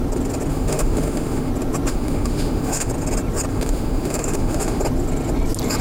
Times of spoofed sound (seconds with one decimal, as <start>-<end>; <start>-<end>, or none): 0.5-1.5; 1.9-2.9; 3.5-4.8